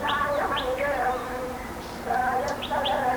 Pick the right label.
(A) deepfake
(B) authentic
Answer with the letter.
A